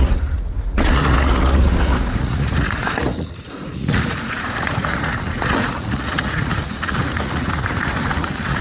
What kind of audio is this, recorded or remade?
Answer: remade